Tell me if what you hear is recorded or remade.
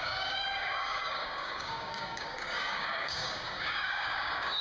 remade